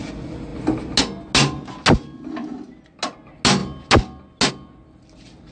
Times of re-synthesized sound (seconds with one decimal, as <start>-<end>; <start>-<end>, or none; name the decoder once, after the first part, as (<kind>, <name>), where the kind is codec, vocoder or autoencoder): none